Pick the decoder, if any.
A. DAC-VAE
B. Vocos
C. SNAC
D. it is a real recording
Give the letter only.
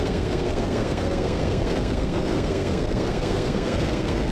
C